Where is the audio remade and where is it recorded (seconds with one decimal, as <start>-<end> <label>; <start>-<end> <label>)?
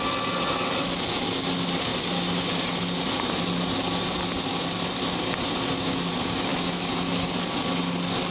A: 0.0-6.5 recorded; 6.5-7.3 remade; 7.3-8.3 recorded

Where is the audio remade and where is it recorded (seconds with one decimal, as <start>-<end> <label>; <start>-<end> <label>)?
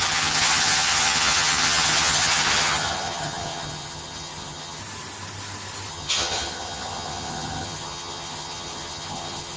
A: 0.0-4.8 remade; 4.8-5.9 recorded; 5.9-9.6 remade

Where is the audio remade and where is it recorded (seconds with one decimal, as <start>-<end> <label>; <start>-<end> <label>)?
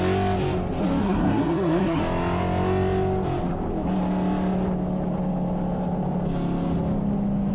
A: 0.0-1.0 recorded; 1.0-2.0 remade; 2.0-7.5 recorded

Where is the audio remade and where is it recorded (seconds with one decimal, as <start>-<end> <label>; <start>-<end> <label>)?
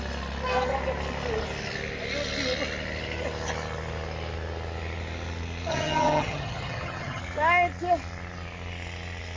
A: 0.0-5.7 recorded; 5.7-7.2 remade; 7.2-9.4 recorded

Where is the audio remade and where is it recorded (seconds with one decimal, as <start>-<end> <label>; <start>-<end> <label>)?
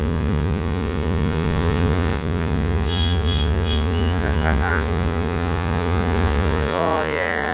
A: 0.0-7.5 remade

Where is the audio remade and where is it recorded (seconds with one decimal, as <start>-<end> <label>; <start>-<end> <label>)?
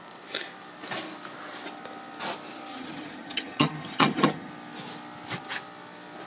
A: 0.0-2.7 recorded; 2.7-4.5 remade; 4.5-6.3 recorded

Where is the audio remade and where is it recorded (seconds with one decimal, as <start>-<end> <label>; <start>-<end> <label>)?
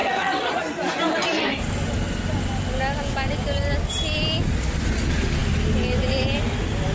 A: 0.0-0.5 remade; 0.5-6.9 recorded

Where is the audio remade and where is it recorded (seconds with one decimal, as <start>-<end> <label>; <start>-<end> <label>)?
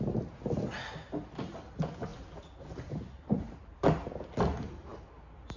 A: 0.0-5.6 recorded